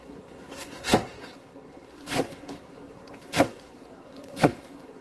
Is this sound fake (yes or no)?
yes